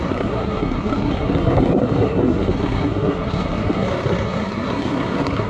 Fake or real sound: fake